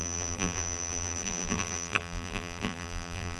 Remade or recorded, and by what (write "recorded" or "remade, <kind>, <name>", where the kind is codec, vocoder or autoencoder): remade, vocoder, BigVGAN v2